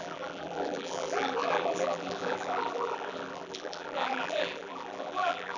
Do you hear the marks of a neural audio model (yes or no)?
yes